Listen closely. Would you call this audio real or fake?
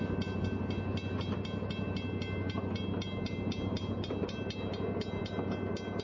real